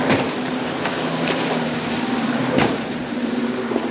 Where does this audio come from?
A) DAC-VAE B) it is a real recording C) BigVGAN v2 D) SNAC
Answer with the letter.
C